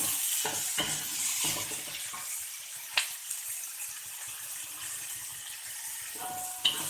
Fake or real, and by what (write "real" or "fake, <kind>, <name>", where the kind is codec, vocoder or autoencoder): real